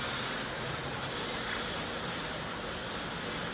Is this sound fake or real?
real